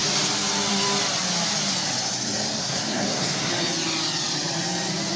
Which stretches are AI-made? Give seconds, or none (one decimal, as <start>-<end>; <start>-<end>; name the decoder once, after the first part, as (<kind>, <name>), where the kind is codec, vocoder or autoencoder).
2.6-3.5 (codec, SNAC)